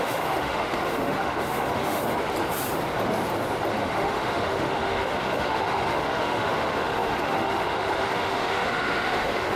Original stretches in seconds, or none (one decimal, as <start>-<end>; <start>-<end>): 2.0-3.8